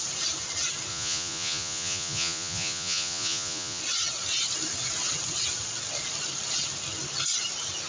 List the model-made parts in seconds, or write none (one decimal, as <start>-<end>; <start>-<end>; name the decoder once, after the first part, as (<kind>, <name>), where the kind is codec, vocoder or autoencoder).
0.9-3.8 (vocoder, Vocos)